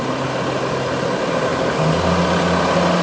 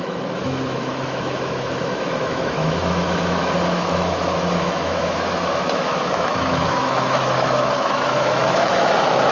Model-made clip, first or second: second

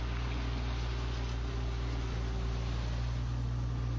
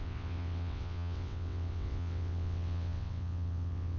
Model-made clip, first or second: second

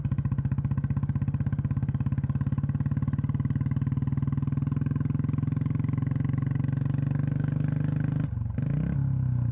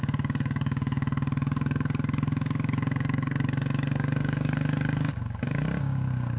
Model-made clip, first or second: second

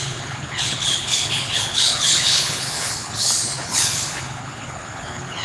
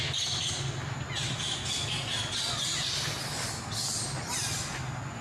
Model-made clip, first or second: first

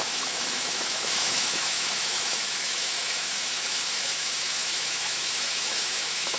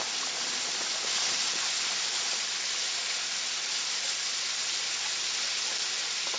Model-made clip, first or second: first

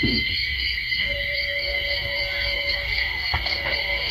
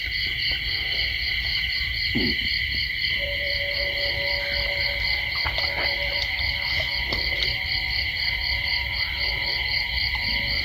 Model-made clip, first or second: first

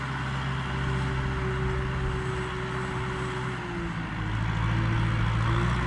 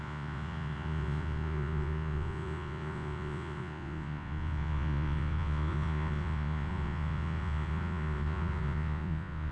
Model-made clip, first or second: second